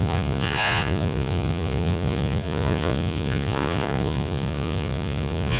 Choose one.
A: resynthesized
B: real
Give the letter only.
A